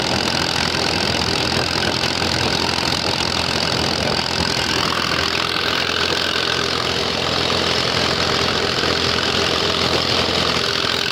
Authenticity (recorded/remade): recorded